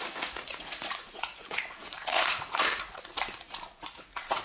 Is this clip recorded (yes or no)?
no